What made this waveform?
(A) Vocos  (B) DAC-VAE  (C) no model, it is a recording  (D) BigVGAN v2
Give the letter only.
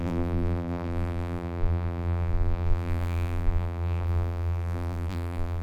D